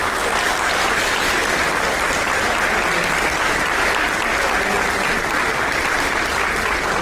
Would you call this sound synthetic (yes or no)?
no